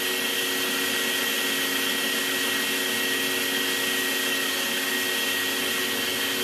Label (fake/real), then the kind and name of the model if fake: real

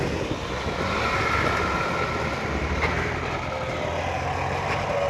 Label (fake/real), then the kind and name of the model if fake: real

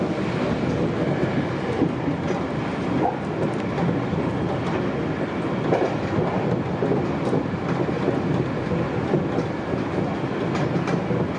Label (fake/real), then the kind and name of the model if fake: real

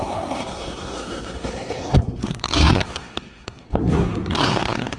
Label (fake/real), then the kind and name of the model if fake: fake, codec, SNAC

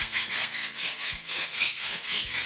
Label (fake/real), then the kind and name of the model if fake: fake, codec, SNAC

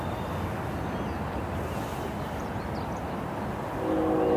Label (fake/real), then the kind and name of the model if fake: real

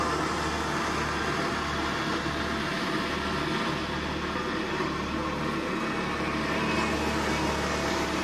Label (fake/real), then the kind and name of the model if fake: real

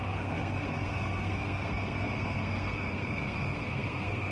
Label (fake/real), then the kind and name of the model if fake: fake, codec, SNAC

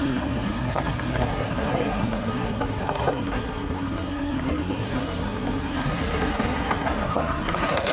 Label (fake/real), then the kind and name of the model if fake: fake, codec, SNAC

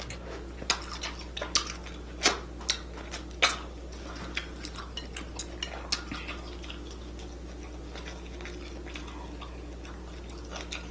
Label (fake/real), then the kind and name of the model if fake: real